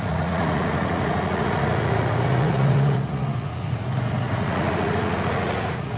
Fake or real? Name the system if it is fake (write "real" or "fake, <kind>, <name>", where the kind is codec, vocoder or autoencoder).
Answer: fake, vocoder, Vocos